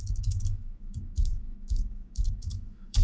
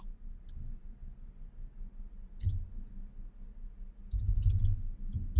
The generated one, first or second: first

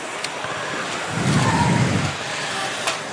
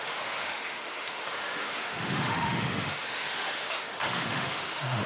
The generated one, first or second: second